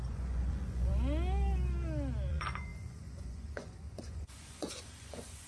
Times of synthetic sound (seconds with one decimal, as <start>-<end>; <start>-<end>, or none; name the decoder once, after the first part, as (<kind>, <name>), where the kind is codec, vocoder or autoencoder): 0.0-0.9 (vocoder, Vocos); 2.3-5.5